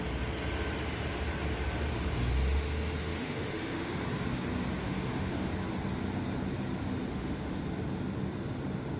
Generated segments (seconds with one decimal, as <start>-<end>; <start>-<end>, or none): 3.0-3.9; 4.8-5.5; 7.1-7.6